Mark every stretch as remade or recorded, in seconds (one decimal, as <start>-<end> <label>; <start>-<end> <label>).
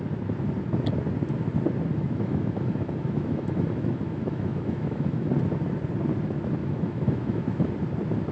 0.0-1.9 recorded; 1.9-5.3 remade; 5.3-6.6 recorded; 6.6-7.7 remade; 7.7-8.3 recorded